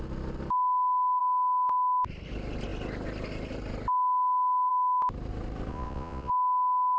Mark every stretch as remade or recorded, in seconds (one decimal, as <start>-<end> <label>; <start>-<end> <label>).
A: 0.0-5.7 recorded; 5.7-6.3 remade; 6.3-7.0 recorded